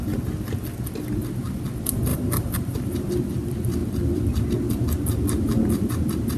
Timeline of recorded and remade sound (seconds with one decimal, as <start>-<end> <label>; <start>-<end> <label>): 0.0-2.1 recorded; 2.1-3.1 remade; 3.1-3.8 recorded; 3.8-4.5 remade; 4.5-6.4 recorded